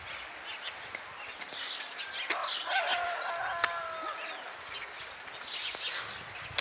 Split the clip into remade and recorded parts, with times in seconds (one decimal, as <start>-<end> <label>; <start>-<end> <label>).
0.0-6.6 recorded